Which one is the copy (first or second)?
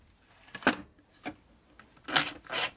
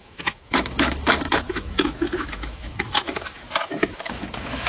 second